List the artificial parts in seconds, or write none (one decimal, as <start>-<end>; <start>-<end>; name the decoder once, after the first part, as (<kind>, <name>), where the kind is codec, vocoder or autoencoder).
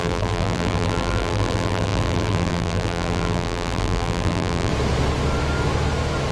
0.0-4.7 (vocoder, BigVGAN v2)